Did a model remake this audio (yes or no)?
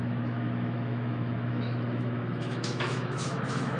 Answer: yes